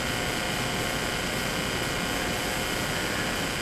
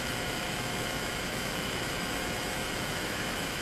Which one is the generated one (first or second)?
second